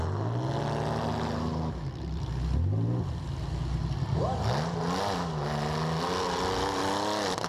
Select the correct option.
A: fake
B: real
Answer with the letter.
B